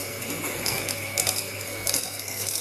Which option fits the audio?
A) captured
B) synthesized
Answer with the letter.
B